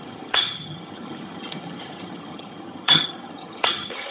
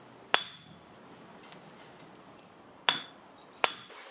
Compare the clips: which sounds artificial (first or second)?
first